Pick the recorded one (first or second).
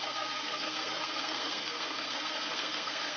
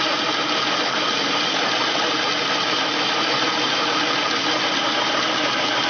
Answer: second